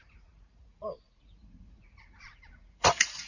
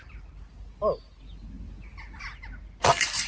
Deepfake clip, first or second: first